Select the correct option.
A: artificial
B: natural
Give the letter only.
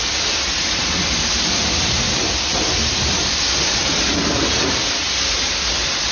B